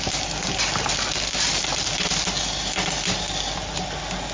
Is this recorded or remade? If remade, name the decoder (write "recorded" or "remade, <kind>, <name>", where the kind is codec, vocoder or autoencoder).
recorded